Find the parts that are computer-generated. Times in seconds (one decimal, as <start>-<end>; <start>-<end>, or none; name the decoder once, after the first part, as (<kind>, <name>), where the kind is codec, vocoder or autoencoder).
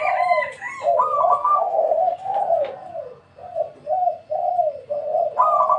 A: 1.4-2.4 (codec, SNAC)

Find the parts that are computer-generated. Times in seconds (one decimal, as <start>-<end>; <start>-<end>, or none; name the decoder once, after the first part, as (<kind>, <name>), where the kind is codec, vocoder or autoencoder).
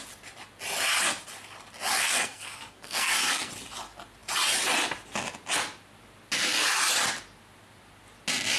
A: 2.0-3.5 (codec, SNAC)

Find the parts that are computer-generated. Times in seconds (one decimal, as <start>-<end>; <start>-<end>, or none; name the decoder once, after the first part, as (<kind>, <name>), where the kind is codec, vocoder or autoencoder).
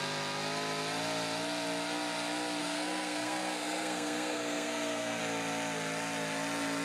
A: 2.6-5.2 (codec, SNAC)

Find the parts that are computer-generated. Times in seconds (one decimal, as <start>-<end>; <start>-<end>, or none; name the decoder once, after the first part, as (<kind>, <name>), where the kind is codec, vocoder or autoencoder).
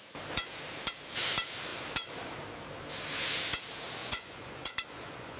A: 4.0-5.4 (vocoder, Vocos)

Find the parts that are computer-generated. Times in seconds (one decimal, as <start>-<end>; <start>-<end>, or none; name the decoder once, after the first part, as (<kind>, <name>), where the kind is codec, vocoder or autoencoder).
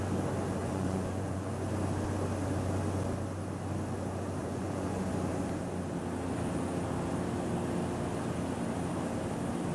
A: 0.6-1.5 (vocoder, Vocos); 4.4-5.1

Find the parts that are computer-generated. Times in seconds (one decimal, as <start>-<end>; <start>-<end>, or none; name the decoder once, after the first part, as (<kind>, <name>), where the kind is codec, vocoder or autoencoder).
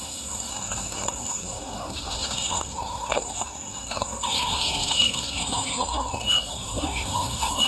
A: 0.0-7.7 (codec, SNAC)